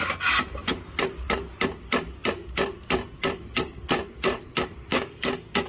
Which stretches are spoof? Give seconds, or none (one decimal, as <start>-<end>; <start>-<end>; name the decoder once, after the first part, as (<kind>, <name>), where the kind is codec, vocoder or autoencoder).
4.9-5.7 (codec, DAC)